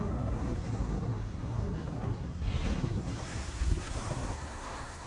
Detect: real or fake fake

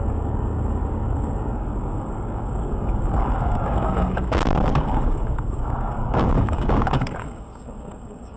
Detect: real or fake fake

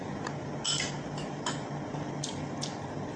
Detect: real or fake real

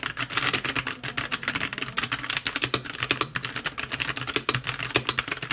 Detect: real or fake real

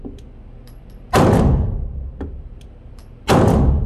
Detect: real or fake real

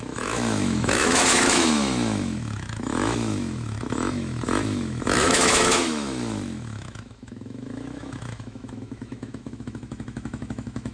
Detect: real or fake fake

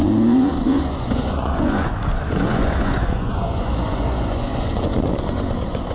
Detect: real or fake fake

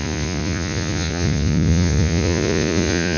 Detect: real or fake fake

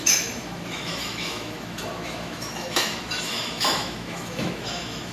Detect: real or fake fake